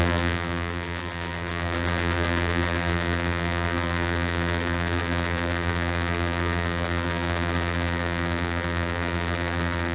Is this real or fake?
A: fake